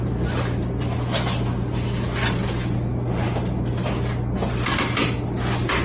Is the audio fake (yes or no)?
no